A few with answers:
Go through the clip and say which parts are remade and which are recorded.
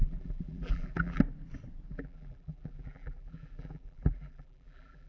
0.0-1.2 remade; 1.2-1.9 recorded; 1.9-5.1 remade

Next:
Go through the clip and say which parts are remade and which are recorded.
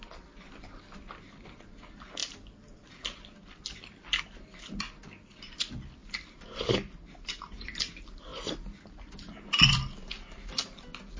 0.0-6.0 recorded; 6.0-7.7 remade; 7.7-11.2 recorded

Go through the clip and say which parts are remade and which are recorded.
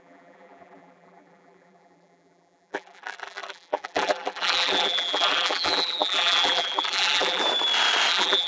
0.0-7.4 remade; 7.4-8.1 recorded; 8.1-8.5 remade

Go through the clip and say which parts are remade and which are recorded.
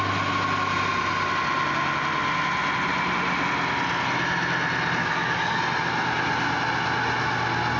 0.0-5.0 recorded; 5.0-5.6 remade; 5.6-7.8 recorded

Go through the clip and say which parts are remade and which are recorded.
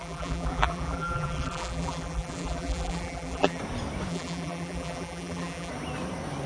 0.0-3.6 remade; 3.6-4.1 recorded; 4.1-5.7 remade; 5.7-6.5 recorded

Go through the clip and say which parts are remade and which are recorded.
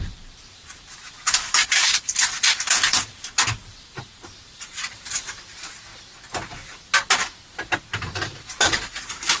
0.0-5.9 remade; 5.9-9.4 recorded